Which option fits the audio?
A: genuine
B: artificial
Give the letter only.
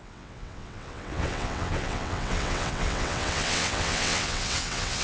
B